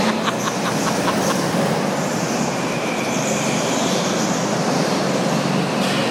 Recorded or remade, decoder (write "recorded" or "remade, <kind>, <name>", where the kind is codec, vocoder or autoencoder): recorded